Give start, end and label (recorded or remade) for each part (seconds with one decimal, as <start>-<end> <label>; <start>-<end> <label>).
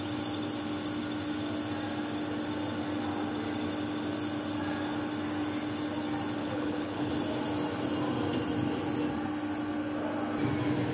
0.0-6.4 recorded; 6.4-7.1 remade; 7.1-10.9 recorded